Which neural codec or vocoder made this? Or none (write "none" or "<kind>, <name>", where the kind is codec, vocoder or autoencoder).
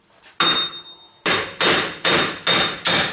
none